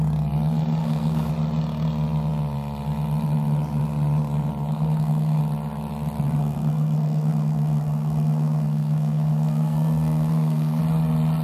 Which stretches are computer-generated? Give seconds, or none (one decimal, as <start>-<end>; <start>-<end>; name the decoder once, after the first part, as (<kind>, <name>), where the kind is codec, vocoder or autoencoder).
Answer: 0.8-1.3 (codec, SNAC); 4.7-5.4; 6.4-10.8